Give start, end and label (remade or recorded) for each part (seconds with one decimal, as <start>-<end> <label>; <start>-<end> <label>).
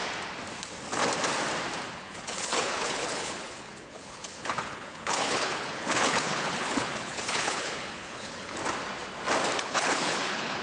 0.0-1.9 recorded; 1.9-8.6 remade; 8.6-9.6 recorded; 9.6-10.6 remade